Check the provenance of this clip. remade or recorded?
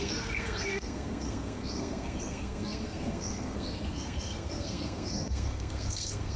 remade